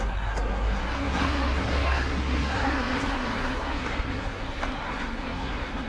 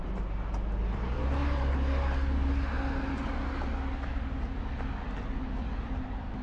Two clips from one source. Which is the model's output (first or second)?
first